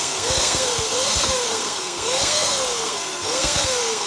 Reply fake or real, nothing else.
fake